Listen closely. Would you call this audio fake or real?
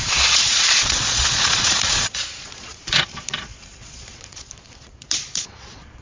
fake